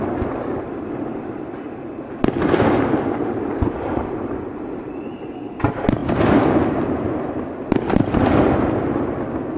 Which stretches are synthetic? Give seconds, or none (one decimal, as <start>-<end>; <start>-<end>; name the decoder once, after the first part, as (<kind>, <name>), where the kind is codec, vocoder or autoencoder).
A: 4.0-5.3 (vocoder, BigVGAN v2)